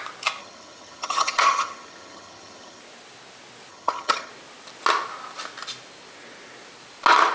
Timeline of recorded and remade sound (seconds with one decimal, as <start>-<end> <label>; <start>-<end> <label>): 0.0-0.4 recorded; 0.4-2.8 remade; 2.8-3.7 recorded; 3.7-4.3 remade; 4.3-7.3 recorded